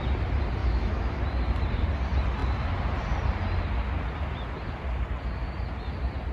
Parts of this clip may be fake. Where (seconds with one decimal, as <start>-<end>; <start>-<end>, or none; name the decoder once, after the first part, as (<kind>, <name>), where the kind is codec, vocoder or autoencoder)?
0.6-1.2 (autoencoder, DAC-VAE)